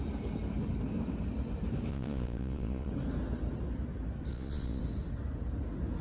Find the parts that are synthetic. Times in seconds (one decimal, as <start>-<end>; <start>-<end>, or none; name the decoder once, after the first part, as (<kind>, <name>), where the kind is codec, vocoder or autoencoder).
1.9-2.9 (vocoder, Vocos); 4.3-4.8